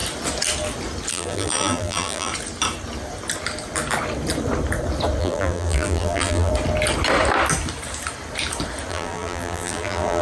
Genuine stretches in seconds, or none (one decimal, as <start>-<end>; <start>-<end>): 0.0-1.1; 2.3-5.2; 6.5-8.9